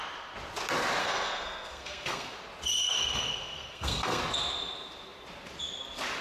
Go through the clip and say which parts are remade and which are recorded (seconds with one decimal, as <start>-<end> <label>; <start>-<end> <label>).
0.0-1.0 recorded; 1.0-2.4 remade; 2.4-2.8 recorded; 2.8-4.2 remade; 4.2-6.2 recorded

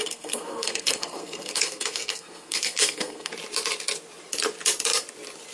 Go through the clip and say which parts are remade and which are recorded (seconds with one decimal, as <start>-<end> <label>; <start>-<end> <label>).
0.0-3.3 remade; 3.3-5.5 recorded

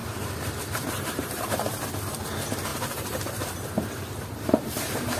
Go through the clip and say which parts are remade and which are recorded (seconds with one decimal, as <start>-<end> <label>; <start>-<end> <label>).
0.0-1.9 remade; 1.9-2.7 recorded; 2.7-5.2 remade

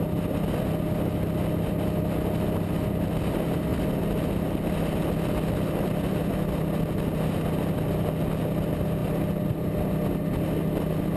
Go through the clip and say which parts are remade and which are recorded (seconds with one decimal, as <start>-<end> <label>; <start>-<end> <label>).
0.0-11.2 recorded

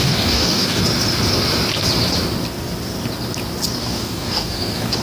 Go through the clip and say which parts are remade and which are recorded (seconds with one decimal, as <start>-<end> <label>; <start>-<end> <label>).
0.0-0.8 remade; 0.8-3.8 recorded; 3.8-5.0 remade

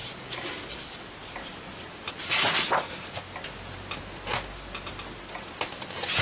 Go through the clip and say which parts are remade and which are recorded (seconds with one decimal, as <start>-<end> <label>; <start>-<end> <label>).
0.0-6.2 recorded